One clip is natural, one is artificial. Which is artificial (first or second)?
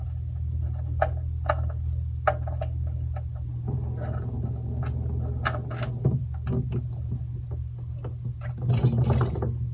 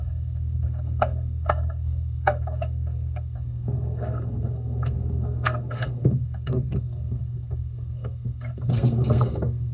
second